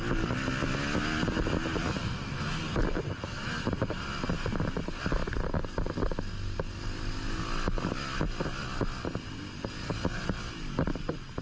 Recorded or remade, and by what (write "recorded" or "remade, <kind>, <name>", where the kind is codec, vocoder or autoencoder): recorded